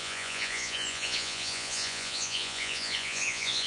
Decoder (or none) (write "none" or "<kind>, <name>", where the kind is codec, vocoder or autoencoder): vocoder, Vocos